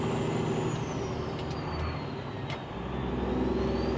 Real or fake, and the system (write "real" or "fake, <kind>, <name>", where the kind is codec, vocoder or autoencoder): real